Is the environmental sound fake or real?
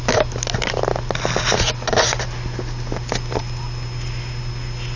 real